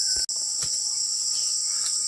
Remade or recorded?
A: recorded